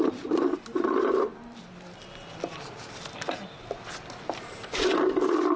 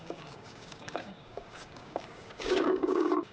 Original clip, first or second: first